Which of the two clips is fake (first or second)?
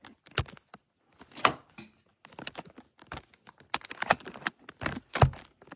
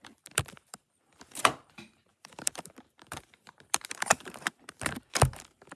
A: second